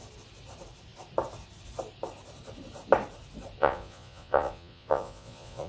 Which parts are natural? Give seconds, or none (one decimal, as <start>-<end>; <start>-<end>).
0.0-3.6